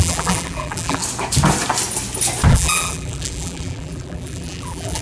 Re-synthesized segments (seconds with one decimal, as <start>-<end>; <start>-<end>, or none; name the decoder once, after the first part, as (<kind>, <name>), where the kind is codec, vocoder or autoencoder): 0.0-1.0 (vocoder, BigVGAN v2); 2.5-5.0